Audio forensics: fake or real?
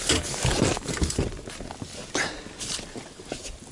real